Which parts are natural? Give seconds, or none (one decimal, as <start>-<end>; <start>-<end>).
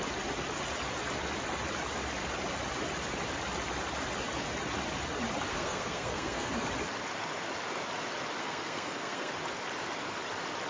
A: 0.0-5.5; 6.5-8.4; 9.3-10.7